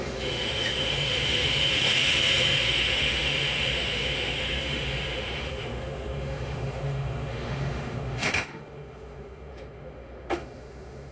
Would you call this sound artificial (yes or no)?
yes